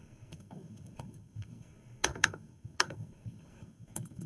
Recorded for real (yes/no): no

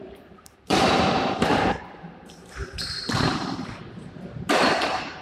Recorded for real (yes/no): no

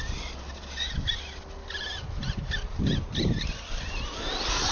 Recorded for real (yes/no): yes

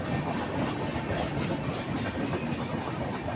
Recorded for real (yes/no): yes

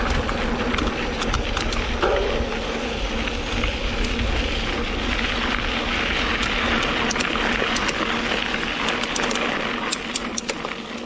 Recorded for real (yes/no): yes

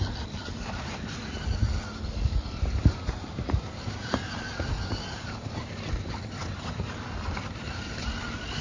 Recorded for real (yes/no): yes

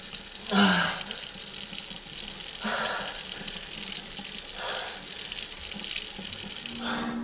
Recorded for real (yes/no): yes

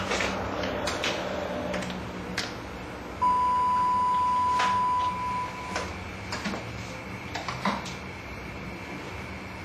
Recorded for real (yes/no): yes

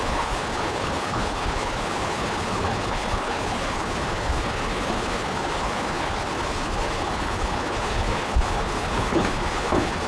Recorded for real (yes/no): no